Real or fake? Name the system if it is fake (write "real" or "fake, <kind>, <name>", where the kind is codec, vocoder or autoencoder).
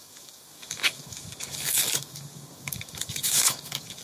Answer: fake, codec, DAC